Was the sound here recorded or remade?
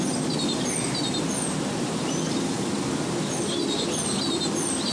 recorded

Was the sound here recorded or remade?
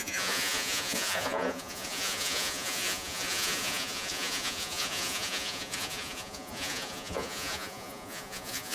remade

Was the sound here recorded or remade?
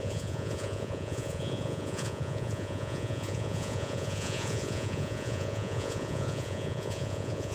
remade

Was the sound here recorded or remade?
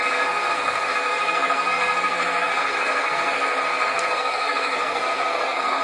remade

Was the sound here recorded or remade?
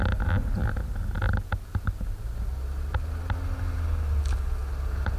recorded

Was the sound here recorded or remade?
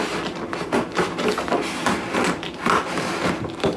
recorded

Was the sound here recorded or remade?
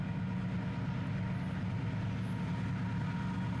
recorded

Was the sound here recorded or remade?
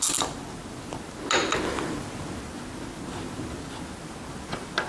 recorded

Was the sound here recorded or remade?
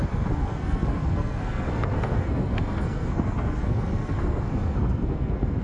remade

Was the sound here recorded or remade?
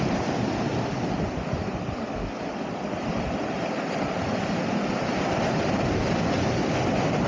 recorded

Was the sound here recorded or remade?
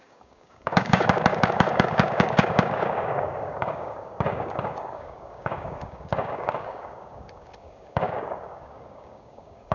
remade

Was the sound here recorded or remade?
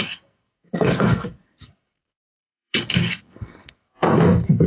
remade